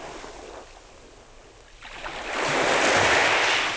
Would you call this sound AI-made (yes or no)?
no